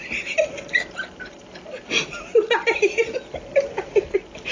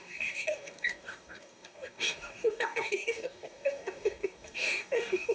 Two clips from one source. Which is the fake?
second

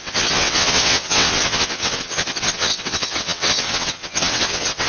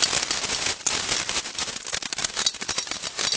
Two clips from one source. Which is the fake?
first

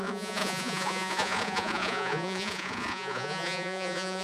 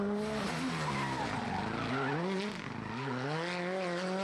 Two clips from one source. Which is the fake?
first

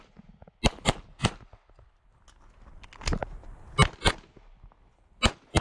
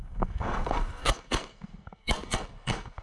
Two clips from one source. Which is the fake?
second